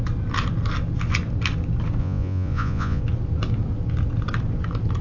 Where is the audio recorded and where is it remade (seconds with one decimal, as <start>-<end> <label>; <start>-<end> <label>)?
0.0-2.0 recorded; 2.0-3.0 remade; 3.0-5.0 recorded